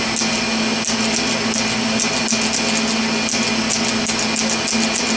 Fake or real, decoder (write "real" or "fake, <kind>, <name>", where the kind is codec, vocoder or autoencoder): real